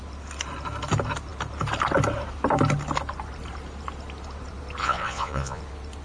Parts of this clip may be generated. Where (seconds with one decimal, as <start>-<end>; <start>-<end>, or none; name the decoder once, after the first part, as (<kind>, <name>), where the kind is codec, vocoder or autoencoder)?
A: 4.8-5.6 (vocoder, Vocos)